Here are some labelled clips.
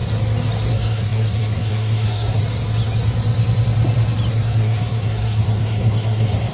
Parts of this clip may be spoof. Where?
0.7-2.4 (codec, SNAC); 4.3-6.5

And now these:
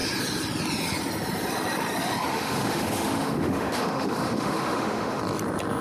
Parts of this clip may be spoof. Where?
2.3-5.2 (autoencoder, DAC-VAE)